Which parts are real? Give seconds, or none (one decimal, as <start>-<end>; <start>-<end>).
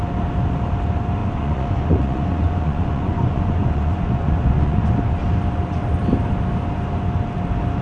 0.0-1.2; 4.9-7.8